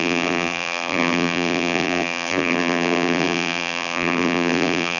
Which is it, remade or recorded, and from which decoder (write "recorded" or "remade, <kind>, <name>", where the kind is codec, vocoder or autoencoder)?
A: remade, vocoder, BigVGAN v2